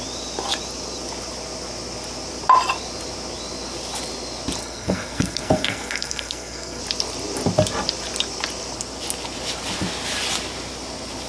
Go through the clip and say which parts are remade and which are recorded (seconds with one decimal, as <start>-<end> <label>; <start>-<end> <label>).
0.0-4.6 recorded; 4.6-6.8 remade; 6.8-11.3 recorded